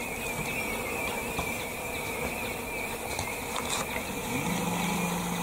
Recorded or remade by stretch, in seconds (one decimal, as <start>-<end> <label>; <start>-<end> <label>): 0.0-5.4 recorded

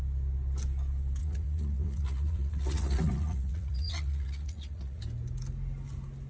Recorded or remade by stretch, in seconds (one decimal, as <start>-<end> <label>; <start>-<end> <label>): 0.0-1.2 recorded; 1.2-5.0 remade; 5.0-6.3 recorded

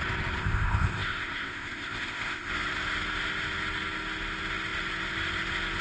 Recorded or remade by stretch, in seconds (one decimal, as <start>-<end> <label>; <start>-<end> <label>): 0.0-0.4 recorded; 0.4-2.5 remade; 2.5-5.8 recorded